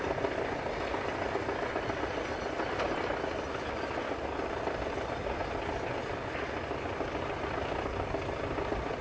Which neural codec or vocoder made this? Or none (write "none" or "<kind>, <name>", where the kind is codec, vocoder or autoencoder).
none